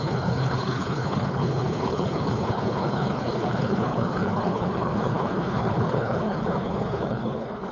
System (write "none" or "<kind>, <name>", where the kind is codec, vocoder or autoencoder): codec, HILCodec